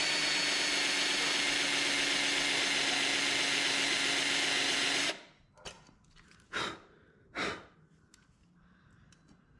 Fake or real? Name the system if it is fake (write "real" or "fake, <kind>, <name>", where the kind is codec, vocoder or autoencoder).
real